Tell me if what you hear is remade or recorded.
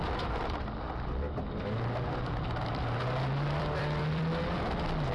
recorded